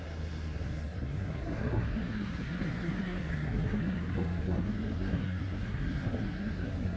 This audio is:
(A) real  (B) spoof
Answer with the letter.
B